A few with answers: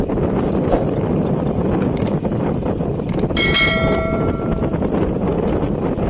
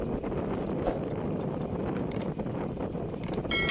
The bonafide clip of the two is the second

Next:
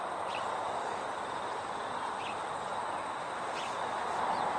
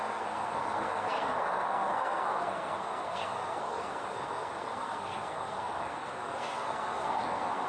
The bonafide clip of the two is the first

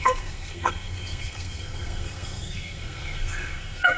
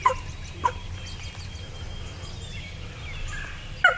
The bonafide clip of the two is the second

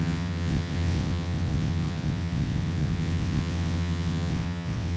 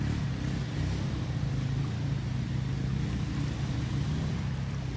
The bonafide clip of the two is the second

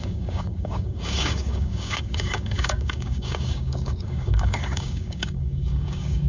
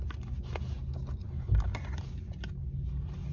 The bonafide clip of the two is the second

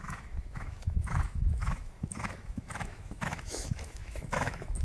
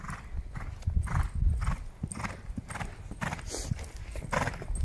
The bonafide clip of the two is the second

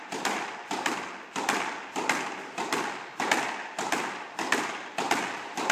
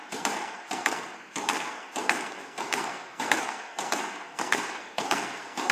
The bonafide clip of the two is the first